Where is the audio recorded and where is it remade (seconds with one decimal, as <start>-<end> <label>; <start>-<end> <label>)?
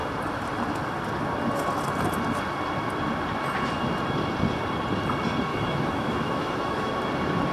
0.0-5.5 recorded; 5.5-6.9 remade; 6.9-7.5 recorded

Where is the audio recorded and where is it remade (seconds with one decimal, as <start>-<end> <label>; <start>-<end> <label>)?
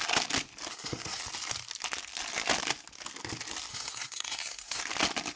0.0-0.7 recorded; 0.7-1.2 remade; 1.2-3.7 recorded; 3.7-4.8 remade; 4.8-5.4 recorded